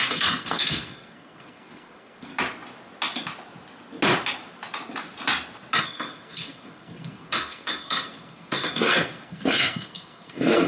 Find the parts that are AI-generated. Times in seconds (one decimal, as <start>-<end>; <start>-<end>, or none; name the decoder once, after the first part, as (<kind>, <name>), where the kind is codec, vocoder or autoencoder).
0.0-2.3 (codec, SNAC); 5.8-10.7